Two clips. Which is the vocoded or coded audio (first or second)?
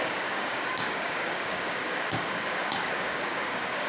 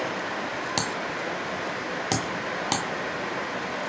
first